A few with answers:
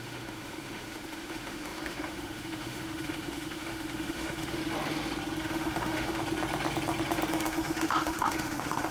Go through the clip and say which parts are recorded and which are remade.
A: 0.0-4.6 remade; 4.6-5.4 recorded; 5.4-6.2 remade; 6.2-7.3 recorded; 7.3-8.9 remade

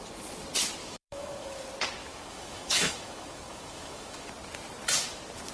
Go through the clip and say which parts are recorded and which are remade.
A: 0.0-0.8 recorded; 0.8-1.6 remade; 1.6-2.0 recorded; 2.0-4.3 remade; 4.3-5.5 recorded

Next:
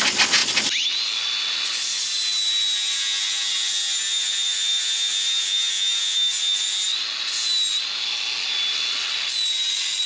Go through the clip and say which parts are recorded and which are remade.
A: 0.0-10.1 recorded

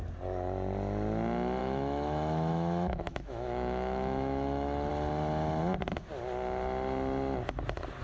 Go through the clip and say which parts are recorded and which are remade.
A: 0.0-1.6 recorded; 1.6-4.9 remade; 4.9-8.0 recorded

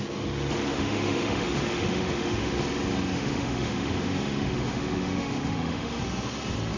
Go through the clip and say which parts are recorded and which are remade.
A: 0.0-0.7 recorded; 0.7-2.6 remade; 2.6-3.1 recorded; 3.1-6.0 remade; 6.0-6.8 recorded

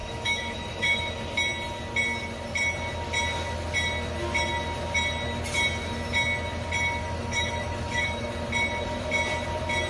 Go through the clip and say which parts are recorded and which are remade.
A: 0.0-1.1 remade; 1.1-7.0 recorded; 7.0-8.3 remade; 8.3-9.9 recorded